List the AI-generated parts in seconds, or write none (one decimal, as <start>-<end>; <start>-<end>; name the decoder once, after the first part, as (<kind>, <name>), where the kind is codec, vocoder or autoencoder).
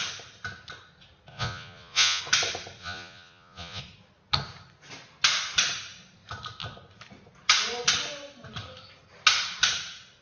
1.3-2.2 (vocoder, Vocos); 2.8-3.8